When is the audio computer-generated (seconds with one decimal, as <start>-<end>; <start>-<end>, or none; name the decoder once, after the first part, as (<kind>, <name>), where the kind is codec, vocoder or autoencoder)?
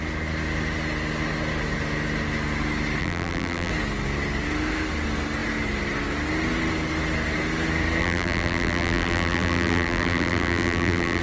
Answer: 3.0-3.7 (vocoder, BigVGAN v2); 8.0-11.2